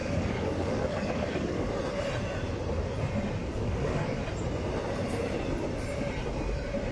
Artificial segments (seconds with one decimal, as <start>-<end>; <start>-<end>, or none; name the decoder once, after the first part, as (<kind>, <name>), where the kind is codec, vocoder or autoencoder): 0.0-1.7 (codec, DAC); 3.4-4.2